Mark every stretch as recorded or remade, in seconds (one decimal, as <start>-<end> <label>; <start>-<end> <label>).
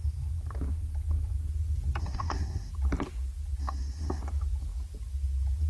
0.0-2.0 recorded; 2.0-2.7 remade; 2.7-3.6 recorded; 3.6-4.2 remade; 4.2-5.7 recorded